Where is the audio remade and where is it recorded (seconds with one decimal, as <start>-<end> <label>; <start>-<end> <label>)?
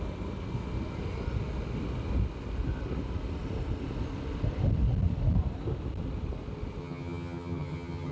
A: 0.0-6.8 recorded; 6.8-8.1 remade